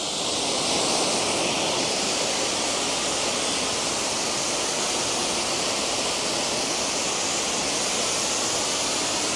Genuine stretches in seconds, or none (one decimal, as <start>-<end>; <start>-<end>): 0.0-9.4